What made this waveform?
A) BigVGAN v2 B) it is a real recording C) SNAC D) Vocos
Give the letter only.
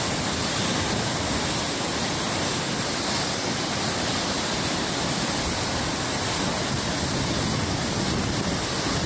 B